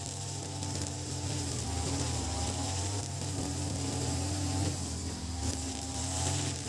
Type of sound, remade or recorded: remade